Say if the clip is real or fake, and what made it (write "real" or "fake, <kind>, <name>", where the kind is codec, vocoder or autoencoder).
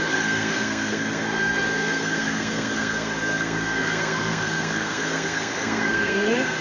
fake, codec, SNAC